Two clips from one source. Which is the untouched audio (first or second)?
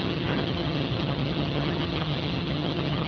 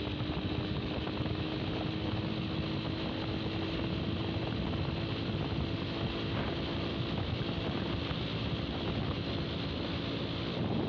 second